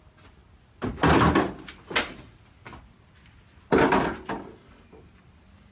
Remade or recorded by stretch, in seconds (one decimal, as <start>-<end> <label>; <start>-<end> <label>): 0.0-5.7 recorded